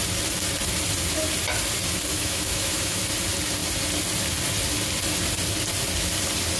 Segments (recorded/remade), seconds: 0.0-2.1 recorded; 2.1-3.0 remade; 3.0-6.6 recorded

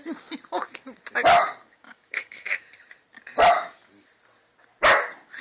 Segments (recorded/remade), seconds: 0.0-1.9 recorded; 1.9-2.7 remade; 2.7-5.4 recorded

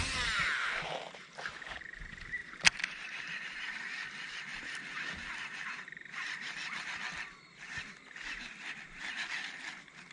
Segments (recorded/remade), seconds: 0.0-10.1 recorded

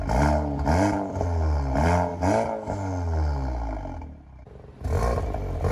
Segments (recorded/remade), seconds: 0.0-5.7 recorded